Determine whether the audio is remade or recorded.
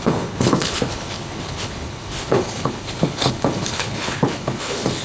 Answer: remade